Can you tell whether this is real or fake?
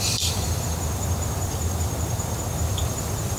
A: fake